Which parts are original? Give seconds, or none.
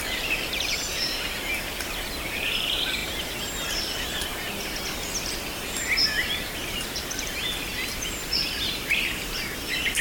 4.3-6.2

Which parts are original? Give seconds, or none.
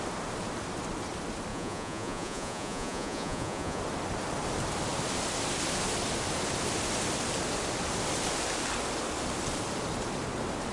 0.0-1.5; 3.8-10.7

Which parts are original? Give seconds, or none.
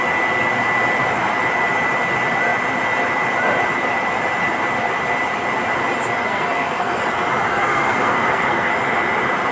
0.0-6.2; 7.0-7.5; 8.7-9.5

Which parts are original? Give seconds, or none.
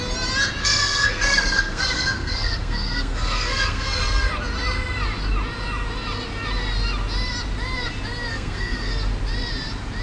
0.0-0.6; 4.3-8.3; 8.9-10.0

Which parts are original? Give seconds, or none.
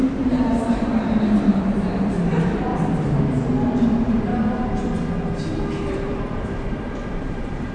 4.3-5.9